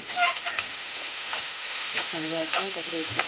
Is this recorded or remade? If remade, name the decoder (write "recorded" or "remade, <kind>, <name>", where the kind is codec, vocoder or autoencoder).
remade, autoencoder, DAC-VAE